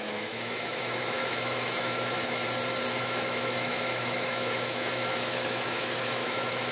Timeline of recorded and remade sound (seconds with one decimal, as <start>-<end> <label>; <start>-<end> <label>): 0.0-2.4 remade; 2.4-3.0 recorded; 3.0-6.7 remade